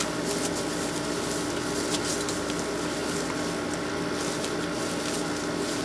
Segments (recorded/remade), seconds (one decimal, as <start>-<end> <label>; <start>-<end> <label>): 0.0-5.8 recorded

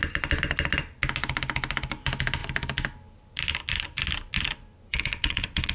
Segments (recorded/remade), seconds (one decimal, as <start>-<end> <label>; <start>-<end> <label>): 0.0-4.9 recorded; 4.9-5.7 remade

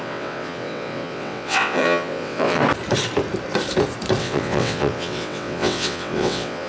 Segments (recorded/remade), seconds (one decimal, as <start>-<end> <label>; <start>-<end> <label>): 0.0-2.6 remade; 2.6-4.2 recorded; 4.2-6.7 remade

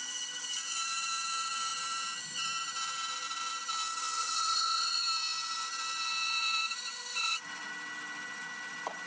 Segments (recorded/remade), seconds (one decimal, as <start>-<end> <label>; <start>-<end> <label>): 0.0-4.2 recorded; 4.2-5.0 remade; 5.0-7.1 recorded; 7.1-7.7 remade; 7.7-9.1 recorded

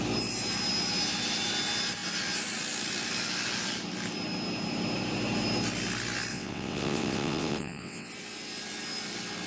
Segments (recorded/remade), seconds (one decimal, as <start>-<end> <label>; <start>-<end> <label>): 0.0-6.3 recorded; 6.3-8.1 remade; 8.1-9.5 recorded